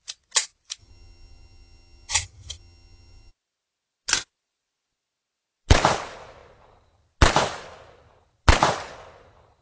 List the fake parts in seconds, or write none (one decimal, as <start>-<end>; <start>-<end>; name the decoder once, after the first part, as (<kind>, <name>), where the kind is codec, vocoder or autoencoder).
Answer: 0.8-3.3 (vocoder, HiFi-GAN)